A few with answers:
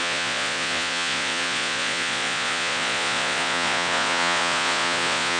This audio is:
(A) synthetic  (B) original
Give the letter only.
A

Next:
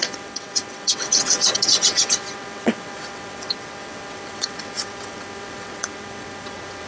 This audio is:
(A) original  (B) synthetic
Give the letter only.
B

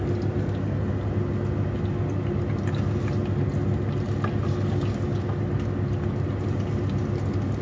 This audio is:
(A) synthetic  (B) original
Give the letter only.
B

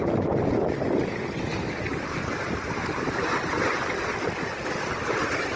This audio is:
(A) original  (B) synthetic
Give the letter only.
A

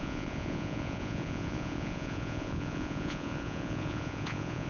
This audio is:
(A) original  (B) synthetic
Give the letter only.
B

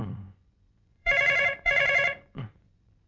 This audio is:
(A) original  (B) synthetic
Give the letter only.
B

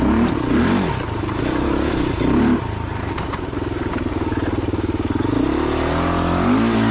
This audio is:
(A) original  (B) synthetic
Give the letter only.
A